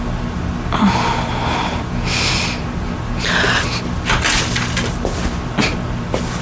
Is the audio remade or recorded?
recorded